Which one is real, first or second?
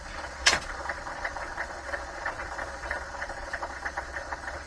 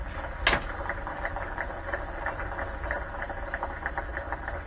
second